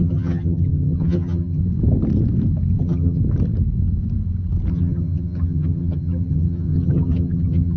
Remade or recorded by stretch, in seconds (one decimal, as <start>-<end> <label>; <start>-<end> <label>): 0.0-1.6 remade; 1.6-2.8 recorded; 2.8-3.2 remade; 3.2-4.7 recorded; 4.7-7.8 remade